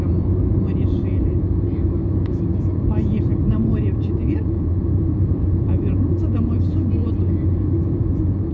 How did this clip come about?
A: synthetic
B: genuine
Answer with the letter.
A